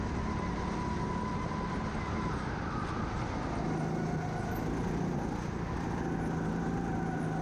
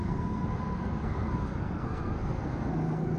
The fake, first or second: second